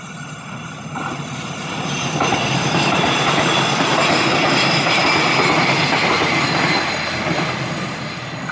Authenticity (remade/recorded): recorded